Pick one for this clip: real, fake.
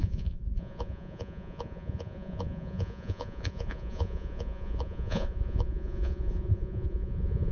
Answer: fake